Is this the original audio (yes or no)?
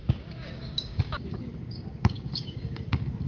no